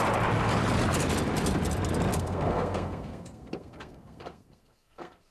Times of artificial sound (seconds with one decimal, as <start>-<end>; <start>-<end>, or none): 2.1-5.3